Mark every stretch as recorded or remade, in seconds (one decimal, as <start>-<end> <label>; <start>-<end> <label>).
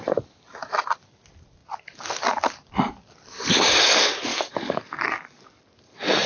0.0-4.3 recorded; 4.3-5.6 remade; 5.6-6.3 recorded